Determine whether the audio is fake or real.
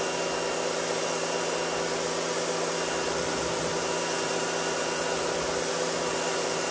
real